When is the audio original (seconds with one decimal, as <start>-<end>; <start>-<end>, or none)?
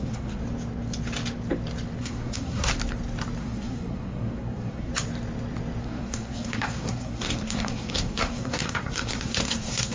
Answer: 0.4-2.0; 2.7-3.4; 4.9-5.8